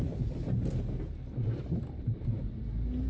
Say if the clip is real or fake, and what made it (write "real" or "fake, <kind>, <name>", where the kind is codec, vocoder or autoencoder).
real